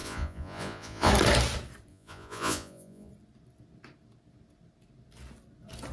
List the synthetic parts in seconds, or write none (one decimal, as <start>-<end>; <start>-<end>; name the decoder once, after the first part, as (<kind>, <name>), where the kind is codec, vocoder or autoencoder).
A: 0.0-1.1 (vocoder, Vocos); 1.9-3.1